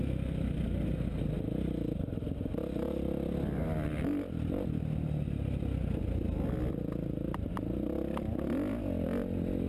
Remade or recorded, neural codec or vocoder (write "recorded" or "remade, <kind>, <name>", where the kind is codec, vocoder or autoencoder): recorded